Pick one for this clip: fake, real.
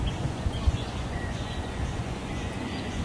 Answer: fake